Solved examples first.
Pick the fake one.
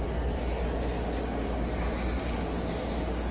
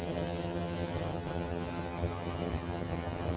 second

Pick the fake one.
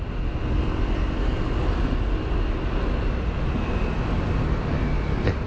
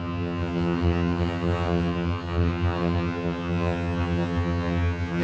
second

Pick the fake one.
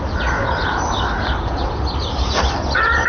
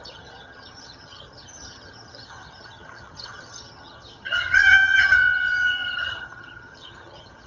second